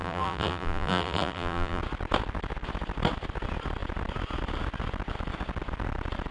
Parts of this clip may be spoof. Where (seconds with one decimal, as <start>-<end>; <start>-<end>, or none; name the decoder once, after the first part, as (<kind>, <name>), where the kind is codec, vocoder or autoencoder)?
0.0-1.8 (vocoder, BigVGAN v2)